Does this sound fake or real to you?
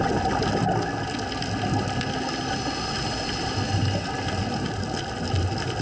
real